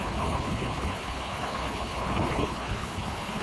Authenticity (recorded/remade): remade